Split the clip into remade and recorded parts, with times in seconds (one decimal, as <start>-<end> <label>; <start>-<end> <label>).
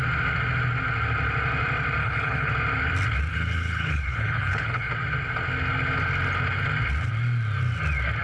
0.0-2.0 recorded; 2.0-2.5 remade; 2.5-3.3 recorded; 3.3-4.9 remade; 4.9-8.2 recorded